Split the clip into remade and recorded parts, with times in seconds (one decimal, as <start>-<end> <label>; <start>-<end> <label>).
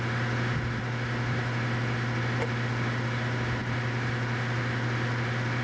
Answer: 0.0-3.6 recorded; 3.6-5.6 remade